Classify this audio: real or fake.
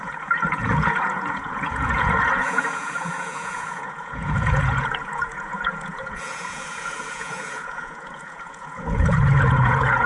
fake